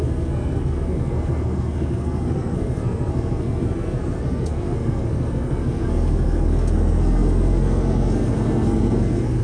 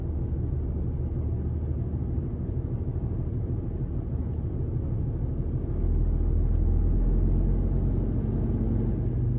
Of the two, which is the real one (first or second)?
second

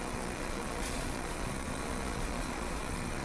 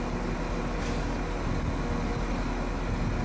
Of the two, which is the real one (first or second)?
second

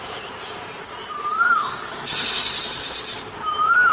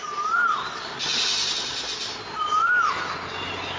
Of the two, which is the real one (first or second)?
second